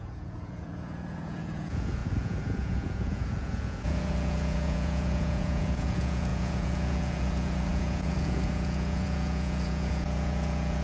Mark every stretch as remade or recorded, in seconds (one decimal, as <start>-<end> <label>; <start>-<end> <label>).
0.0-10.8 remade